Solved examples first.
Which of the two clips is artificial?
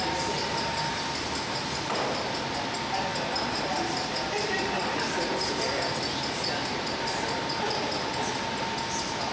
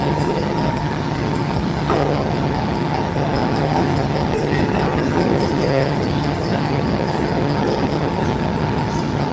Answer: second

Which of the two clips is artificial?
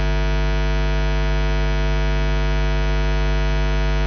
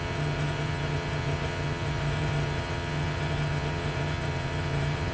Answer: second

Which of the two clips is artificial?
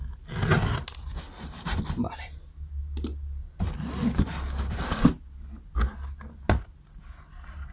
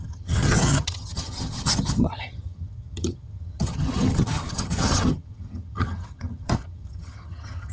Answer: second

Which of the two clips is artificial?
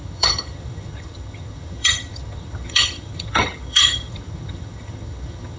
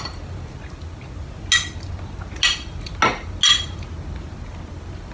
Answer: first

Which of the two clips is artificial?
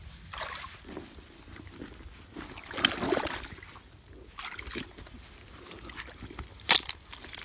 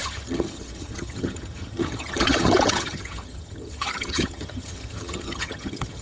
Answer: second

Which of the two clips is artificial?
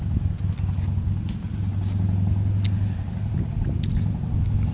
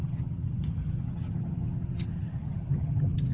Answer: second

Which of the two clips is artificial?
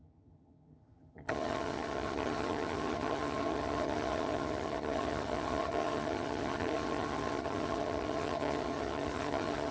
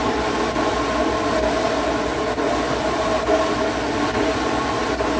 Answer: first